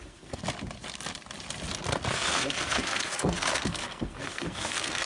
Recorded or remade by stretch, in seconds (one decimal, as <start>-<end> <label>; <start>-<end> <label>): 0.0-0.4 remade; 0.4-2.1 recorded; 2.1-5.1 remade